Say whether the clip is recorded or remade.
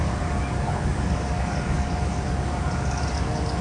remade